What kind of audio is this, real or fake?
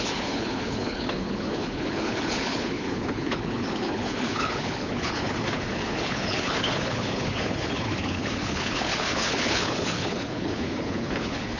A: fake